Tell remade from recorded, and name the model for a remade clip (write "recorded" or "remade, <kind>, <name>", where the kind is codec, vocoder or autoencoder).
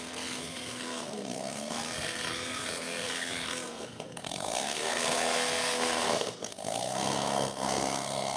remade, codec, SNAC